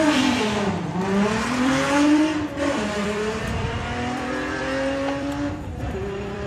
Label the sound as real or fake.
fake